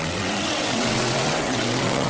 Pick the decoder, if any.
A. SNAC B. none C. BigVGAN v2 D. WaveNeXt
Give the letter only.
D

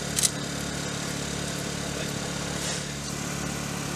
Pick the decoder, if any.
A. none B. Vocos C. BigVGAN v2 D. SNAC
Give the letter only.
A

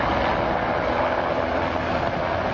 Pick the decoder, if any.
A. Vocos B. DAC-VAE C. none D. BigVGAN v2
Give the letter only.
C